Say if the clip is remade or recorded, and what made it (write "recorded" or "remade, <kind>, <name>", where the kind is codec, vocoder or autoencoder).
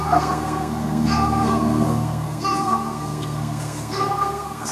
remade, codec, SNAC